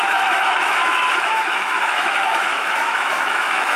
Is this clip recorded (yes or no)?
no